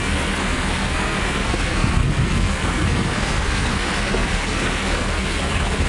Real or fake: fake